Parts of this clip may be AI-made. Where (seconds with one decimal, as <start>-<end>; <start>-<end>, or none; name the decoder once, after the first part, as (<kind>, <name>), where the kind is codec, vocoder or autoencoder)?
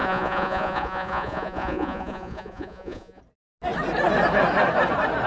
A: 0.0-3.2 (vocoder, Vocos)